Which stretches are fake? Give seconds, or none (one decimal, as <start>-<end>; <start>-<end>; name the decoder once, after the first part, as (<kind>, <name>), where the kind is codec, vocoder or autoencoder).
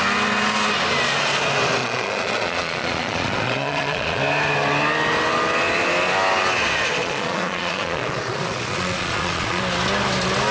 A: 1.8-4.2 (vocoder, Vocos); 7.0-9.6